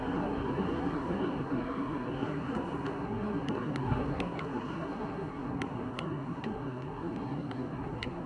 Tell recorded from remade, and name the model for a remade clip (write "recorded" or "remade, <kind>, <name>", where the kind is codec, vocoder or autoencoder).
remade, codec, SNAC